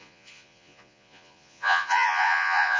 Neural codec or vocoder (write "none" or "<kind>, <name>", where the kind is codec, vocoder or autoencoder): vocoder, Vocos